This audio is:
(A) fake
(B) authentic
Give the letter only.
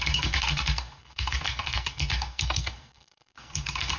A